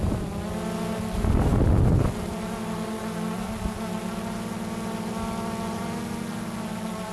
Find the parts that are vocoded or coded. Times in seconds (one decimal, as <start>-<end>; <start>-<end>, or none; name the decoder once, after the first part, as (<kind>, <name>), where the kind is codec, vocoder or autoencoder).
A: none